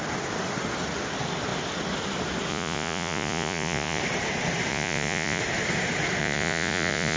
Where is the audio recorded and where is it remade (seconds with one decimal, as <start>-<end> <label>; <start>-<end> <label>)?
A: 0.0-2.5 recorded; 2.5-4.0 remade; 4.0-4.7 recorded; 4.7-5.4 remade; 5.4-6.2 recorded; 6.2-7.2 remade